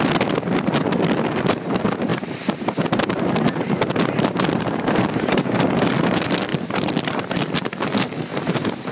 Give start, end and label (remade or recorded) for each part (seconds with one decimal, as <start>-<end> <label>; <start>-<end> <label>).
0.0-2.1 recorded; 2.1-5.9 remade; 5.9-6.5 recorded; 6.5-7.2 remade; 7.2-8.3 recorded; 8.3-8.9 remade